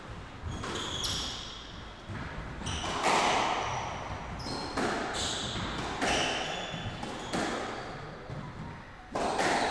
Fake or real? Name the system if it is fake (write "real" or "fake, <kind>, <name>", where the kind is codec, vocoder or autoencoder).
real